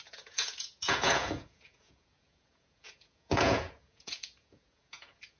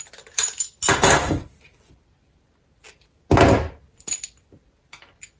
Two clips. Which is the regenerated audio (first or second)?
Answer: first